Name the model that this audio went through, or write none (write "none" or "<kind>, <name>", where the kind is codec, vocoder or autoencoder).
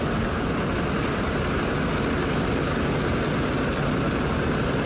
none